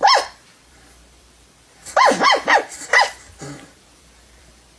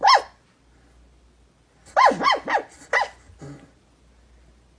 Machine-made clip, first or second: first